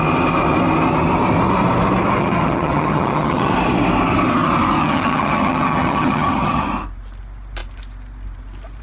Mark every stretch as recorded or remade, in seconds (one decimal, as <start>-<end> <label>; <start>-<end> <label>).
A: 0.0-2.2 recorded; 2.2-3.5 remade; 3.5-4.8 recorded; 4.8-6.6 remade; 6.6-8.8 recorded